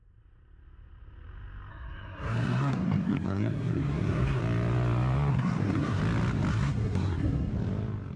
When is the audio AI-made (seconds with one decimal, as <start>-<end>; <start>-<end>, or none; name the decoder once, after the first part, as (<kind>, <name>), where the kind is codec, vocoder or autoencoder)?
1.7-4.4 (codec, SNAC); 5.3-6.0; 6.5-7.5